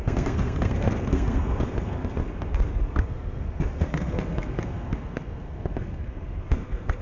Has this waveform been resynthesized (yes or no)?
yes